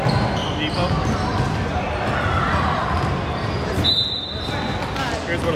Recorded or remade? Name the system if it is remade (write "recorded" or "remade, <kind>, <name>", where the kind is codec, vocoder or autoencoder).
recorded